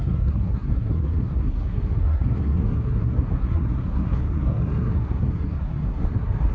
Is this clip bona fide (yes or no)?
no